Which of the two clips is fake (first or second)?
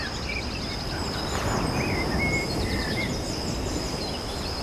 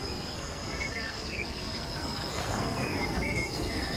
second